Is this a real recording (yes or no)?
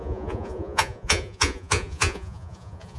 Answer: no